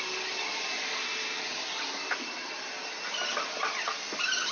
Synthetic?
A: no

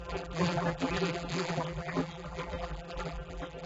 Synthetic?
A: yes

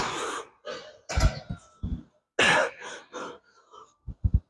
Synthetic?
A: no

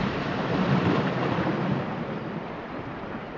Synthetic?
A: no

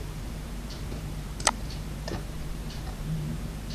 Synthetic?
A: yes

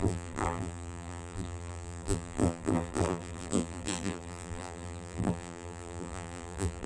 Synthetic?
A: yes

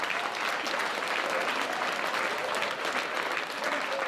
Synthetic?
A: no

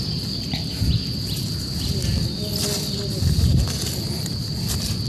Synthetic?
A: no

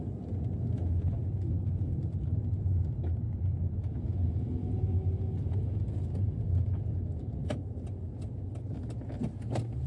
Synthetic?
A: no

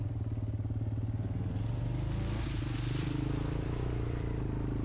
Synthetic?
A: yes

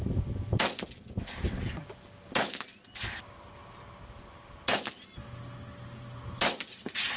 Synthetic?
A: no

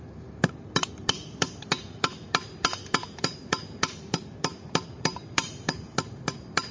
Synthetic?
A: yes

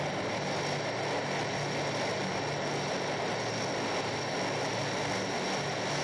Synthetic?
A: no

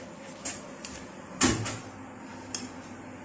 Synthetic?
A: no